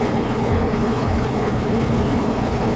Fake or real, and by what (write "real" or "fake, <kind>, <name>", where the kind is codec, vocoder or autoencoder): fake, codec, HILCodec